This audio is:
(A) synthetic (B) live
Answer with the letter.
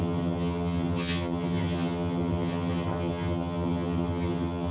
A